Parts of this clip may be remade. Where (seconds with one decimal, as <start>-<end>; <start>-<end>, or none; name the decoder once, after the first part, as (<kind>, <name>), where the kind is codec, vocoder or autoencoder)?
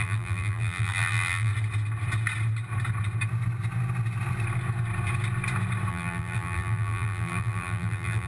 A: 0.0-1.5 (vocoder, BigVGAN v2); 5.9-8.3